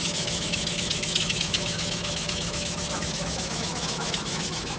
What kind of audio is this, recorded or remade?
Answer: remade